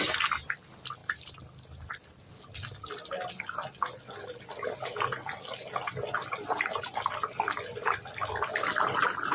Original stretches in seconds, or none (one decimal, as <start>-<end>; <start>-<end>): 0.0-9.3